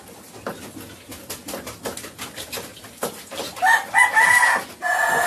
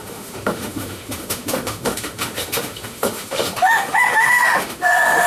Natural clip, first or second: first